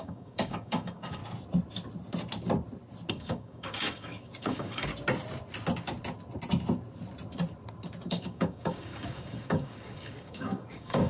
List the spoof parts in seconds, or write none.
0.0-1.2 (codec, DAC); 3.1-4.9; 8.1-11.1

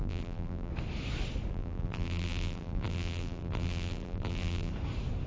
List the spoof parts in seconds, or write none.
0.0-0.7 (vocoder, BigVGAN v2); 1.5-4.7

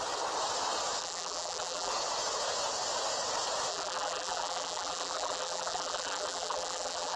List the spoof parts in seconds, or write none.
1.0-1.9 (vocoder, BigVGAN v2); 3.7-7.2

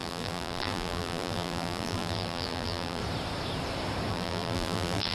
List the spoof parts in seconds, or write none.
0.0-3.0 (vocoder, BigVGAN v2); 4.1-5.1

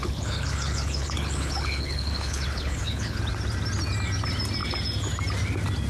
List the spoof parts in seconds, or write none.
0.0-3.2 (codec, HILCodec)

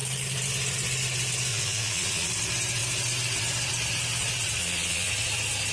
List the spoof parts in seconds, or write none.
1.5-2.3 (vocoder, Vocos); 4.6-5.1

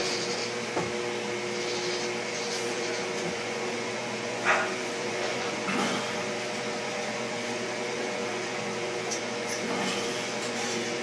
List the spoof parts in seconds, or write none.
0.0-0.4 (vocoder, Vocos); 2.2-11.0

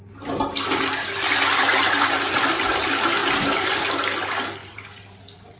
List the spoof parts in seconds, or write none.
1.7-2.7 (vocoder, BigVGAN v2); 3.2-3.8; 4.6-5.6